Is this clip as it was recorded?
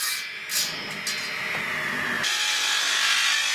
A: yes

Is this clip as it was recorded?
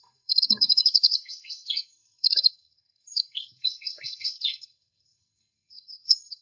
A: no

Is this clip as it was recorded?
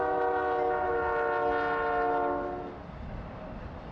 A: yes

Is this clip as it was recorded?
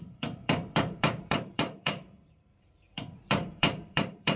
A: no